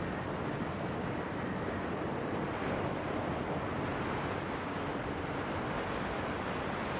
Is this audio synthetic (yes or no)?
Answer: no